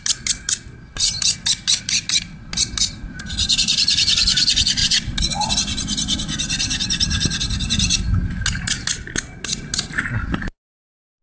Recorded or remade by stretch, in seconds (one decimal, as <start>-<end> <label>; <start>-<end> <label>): 0.0-4.8 recorded; 4.8-5.5 remade; 5.5-11.2 recorded

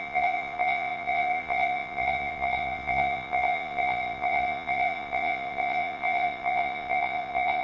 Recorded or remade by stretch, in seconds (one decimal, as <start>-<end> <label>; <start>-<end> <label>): 0.0-7.6 remade

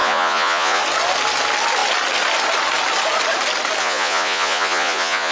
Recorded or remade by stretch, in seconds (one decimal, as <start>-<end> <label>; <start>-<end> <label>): 0.0-0.8 remade; 0.8-3.8 recorded; 3.8-5.3 remade

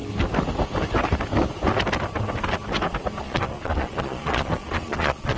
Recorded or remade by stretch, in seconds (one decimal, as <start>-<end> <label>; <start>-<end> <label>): 0.0-3.2 recorded; 3.2-5.4 remade

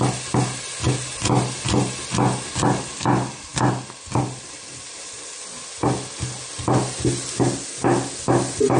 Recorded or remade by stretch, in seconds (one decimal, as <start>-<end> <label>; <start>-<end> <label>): 0.0-8.8 recorded